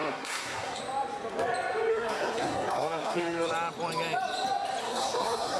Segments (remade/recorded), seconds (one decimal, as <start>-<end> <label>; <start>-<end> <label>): 0.0-0.8 remade; 0.8-1.9 recorded; 1.9-3.5 remade; 3.5-4.8 recorded; 4.8-5.6 remade